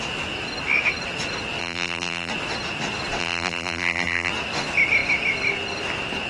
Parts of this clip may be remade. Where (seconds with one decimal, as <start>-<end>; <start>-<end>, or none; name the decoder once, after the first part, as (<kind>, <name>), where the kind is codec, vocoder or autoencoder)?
1.6-2.3 (vocoder, BigVGAN v2); 3.2-4.3